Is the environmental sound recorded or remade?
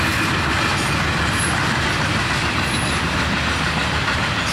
recorded